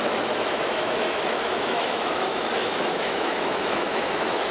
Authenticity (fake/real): fake